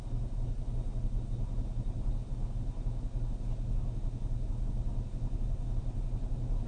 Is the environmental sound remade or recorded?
recorded